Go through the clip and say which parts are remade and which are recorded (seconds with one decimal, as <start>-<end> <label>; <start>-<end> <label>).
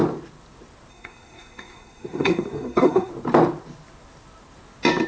0.0-0.9 recorded; 0.9-3.1 remade; 3.1-5.1 recorded